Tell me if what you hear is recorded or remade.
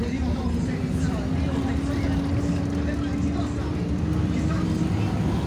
recorded